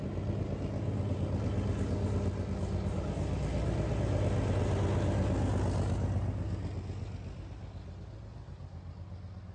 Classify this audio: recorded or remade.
recorded